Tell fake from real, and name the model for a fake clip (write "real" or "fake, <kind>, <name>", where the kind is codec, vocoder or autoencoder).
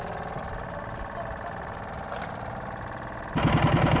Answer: real